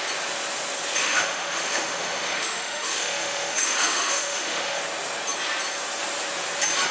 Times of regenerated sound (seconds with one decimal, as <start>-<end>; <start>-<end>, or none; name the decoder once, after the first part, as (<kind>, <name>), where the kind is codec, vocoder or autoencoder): 1.0-4.8 (autoencoder, DAC-VAE)